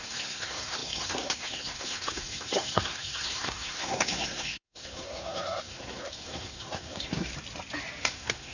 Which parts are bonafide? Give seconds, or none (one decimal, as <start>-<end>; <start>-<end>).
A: 7.3-8.0